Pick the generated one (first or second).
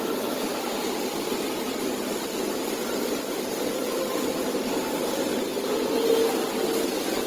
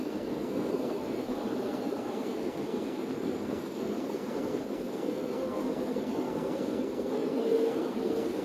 second